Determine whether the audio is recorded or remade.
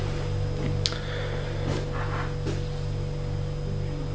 recorded